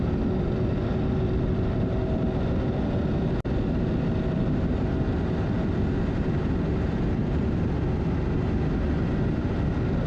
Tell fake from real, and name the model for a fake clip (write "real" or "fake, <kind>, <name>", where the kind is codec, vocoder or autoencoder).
real